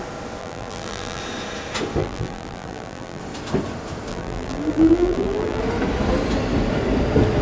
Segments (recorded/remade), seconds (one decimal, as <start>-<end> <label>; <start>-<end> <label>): 0.0-0.4 recorded; 0.4-1.2 remade; 1.2-2.0 recorded; 2.0-3.2 remade; 3.2-4.1 recorded; 4.1-5.6 remade; 5.6-7.4 recorded